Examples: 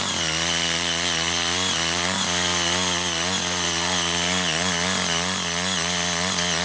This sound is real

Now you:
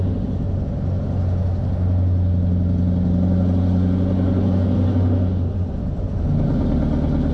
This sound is real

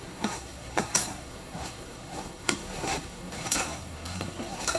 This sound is fake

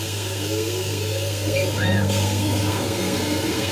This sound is fake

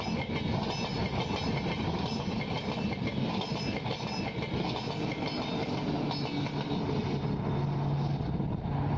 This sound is real